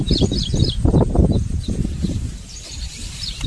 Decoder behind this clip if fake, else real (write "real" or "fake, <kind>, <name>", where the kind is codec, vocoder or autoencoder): fake, vocoder, BigVGAN v2